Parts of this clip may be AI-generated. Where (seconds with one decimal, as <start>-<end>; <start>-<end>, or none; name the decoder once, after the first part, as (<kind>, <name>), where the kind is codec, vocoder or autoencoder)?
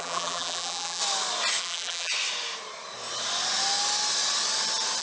0.0-1.0 (vocoder, BigVGAN v2); 1.6-2.1